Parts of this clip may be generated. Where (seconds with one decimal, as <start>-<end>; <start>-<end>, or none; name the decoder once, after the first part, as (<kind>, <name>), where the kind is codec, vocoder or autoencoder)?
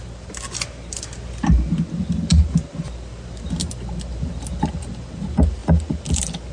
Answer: none